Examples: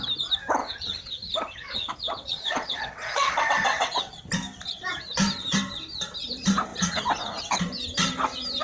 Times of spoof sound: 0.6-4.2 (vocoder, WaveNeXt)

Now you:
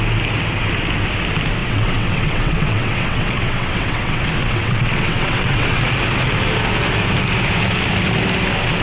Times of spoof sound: 1.6-5.8 (vocoder, WaveNeXt)

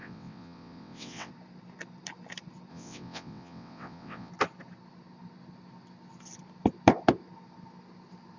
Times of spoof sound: 0.0-1.3 (vocoder, WaveNeXt); 2.7-4.3

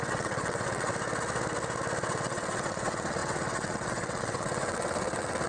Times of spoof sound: 0.0-0.9 (vocoder, WaveNeXt); 2.0-5.5

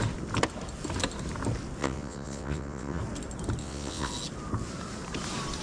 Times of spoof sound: 1.8-3.0 (vocoder, WaveNeXt); 3.6-4.1

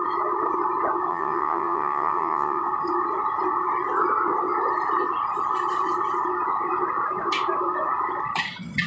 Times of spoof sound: 1.1-2.6 (vocoder, WaveNeXt)

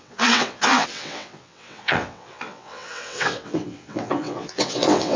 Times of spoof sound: 0.0-5.2 (vocoder, WaveNeXt)